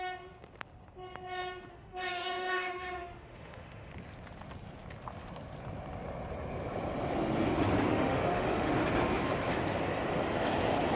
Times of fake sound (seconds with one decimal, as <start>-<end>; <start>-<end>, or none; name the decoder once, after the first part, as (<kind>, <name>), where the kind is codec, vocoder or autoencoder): 1.7-3.9 (autoencoder, DAC-VAE); 7.9-8.7